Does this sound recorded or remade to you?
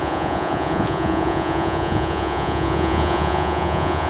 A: remade